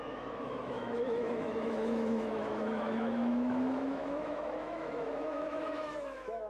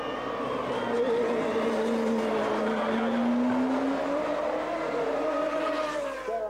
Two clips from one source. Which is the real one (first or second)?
second